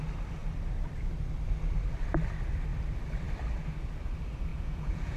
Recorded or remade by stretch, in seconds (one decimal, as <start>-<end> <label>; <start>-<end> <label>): 0.0-4.5 recorded; 4.5-5.2 remade